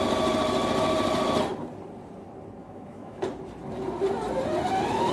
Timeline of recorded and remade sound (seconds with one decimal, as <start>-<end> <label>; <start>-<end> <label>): 0.0-2.6 recorded; 2.6-3.2 remade; 3.2-5.1 recorded